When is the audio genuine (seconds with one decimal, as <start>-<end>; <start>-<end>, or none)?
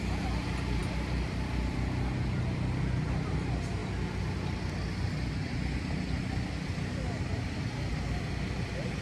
0.0-9.0